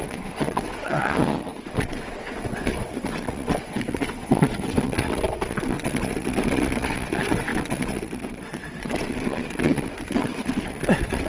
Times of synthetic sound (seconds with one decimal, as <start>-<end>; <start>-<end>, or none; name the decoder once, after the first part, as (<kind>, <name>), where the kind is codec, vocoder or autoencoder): 0.0-11.3 (vocoder, WaveNeXt)